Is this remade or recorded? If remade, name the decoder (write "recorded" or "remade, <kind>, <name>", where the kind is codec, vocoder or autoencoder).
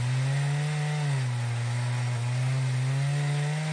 recorded